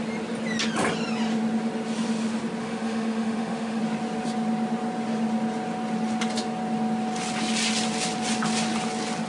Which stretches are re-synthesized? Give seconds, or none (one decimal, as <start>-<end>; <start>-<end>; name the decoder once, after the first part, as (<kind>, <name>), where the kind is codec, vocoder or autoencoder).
2.6-3.8 (autoencoder, DAC-VAE)